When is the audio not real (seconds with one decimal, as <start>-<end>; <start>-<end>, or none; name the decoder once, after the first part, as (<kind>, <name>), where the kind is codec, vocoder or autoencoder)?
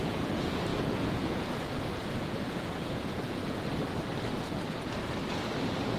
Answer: 0.0-3.4 (vocoder, Vocos); 4.3-5.0